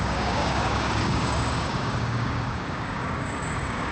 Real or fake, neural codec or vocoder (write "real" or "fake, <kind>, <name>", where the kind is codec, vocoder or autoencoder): fake, codec, DAC